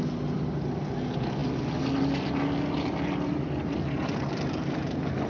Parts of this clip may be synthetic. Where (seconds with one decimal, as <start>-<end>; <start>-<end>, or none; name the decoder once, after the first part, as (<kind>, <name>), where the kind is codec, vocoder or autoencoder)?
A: none